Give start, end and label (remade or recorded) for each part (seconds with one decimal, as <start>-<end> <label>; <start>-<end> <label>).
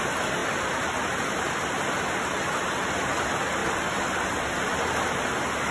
0.0-5.7 recorded